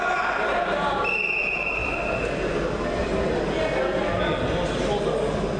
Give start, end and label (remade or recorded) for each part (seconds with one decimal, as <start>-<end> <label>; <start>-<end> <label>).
0.0-5.6 recorded

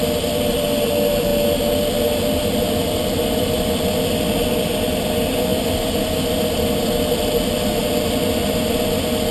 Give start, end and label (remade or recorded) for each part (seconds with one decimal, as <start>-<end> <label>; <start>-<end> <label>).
0.0-9.3 recorded

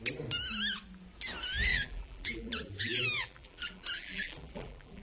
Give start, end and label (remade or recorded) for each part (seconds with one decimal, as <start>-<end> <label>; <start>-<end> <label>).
0.0-1.7 recorded; 1.7-5.0 remade